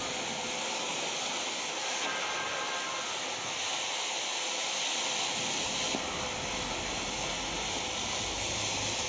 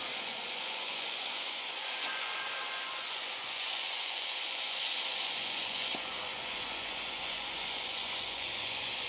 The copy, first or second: second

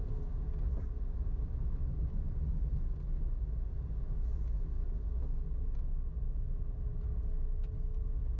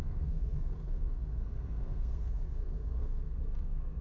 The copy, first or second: second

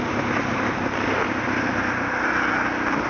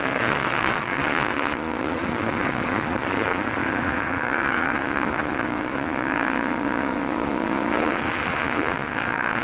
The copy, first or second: second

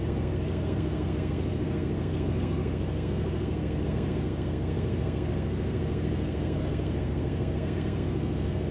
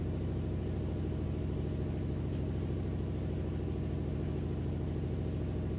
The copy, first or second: first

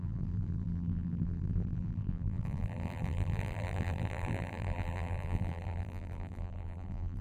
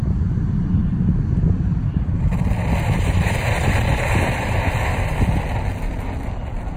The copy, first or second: first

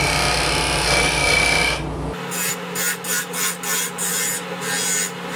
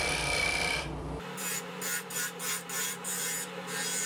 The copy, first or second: second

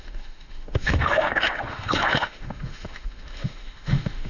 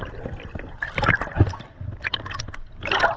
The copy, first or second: first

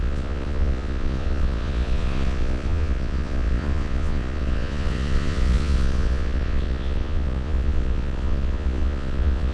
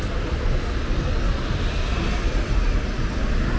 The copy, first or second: first